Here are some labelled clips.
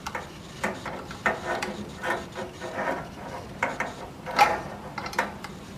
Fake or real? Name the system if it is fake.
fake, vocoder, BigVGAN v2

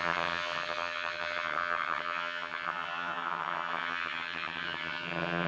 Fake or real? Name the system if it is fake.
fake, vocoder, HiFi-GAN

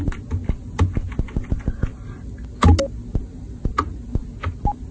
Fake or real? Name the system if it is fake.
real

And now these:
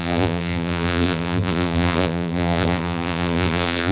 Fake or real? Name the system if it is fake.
fake, vocoder, BigVGAN v2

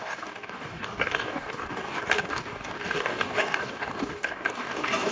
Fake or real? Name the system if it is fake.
fake, codec, DAC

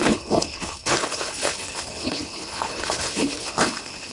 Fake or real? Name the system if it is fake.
fake, codec, HILCodec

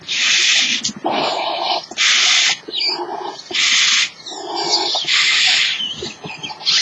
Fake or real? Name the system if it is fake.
real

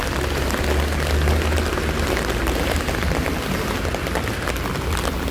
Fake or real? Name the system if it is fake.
real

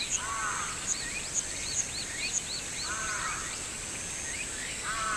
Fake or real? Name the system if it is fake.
real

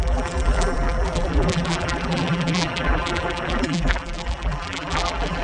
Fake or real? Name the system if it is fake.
fake, vocoder, BigVGAN v2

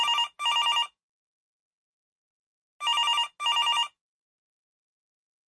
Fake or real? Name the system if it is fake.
real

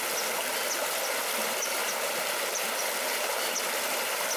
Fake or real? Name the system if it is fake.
real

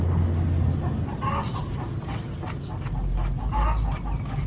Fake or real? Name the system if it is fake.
real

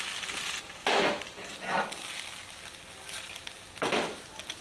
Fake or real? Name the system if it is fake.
real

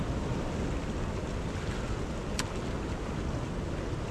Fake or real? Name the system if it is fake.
real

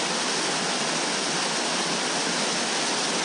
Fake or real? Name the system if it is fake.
real